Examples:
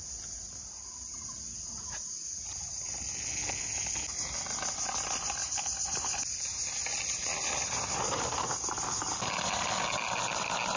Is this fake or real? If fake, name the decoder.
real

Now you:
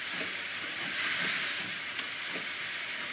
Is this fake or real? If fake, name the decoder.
real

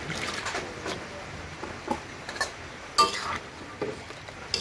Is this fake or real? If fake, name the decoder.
real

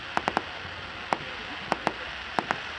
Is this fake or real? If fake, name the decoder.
real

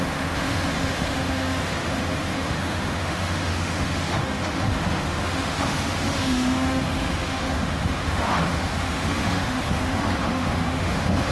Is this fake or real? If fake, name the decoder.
fake, autoencoder, DAC-VAE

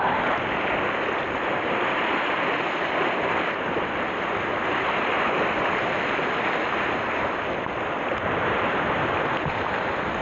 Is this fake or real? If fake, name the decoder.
real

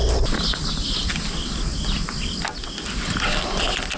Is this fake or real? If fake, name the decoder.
real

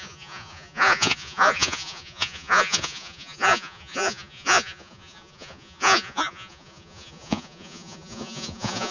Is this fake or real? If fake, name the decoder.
fake, vocoder, Vocos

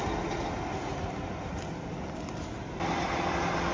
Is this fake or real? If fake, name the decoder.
real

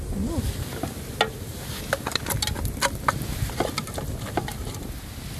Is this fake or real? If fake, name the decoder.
real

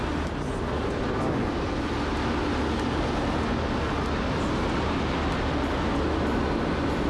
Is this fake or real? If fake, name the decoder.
real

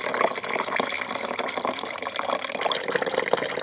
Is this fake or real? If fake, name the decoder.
fake, vocoder, BigVGAN v2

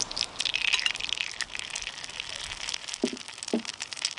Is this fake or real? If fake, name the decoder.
real